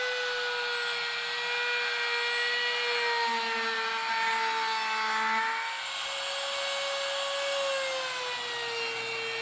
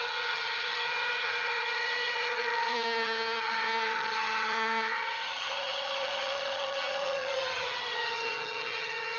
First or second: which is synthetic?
second